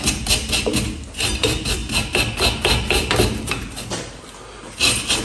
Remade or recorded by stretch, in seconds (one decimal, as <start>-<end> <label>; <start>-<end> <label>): 0.0-5.2 recorded